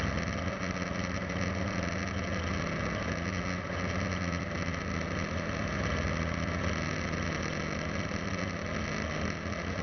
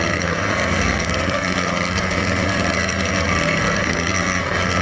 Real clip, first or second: first